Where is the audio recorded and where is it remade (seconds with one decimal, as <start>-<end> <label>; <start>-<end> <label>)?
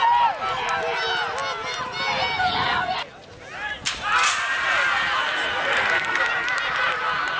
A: 0.0-5.7 recorded; 5.7-6.2 remade; 6.2-7.4 recorded